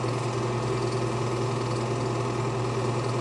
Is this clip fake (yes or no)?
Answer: no